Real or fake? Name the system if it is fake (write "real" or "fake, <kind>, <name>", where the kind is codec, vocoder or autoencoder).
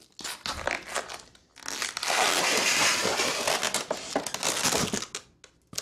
real